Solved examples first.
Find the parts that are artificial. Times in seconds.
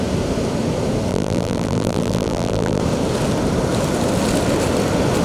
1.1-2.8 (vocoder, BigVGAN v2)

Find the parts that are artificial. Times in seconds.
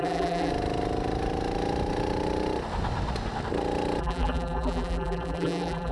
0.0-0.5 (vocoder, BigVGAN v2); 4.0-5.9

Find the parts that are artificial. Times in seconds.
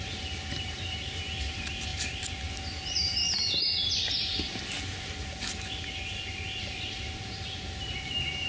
0.0-3.2 (vocoder, BigVGAN v2); 6.6-8.5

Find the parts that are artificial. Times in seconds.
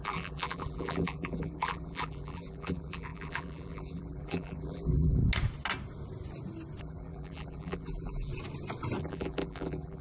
0.0-5.2 (vocoder, BigVGAN v2); 6.8-8.3; 9.0-10.0